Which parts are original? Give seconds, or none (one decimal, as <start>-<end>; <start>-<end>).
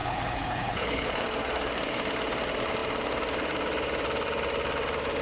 1.3-5.2